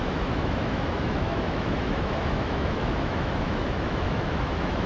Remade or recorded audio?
remade